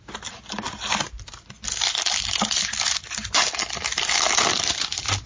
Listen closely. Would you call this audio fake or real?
real